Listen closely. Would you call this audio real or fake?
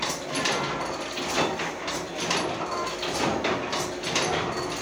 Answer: real